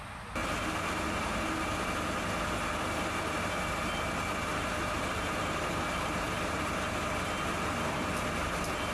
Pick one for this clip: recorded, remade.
recorded